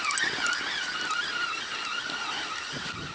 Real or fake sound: real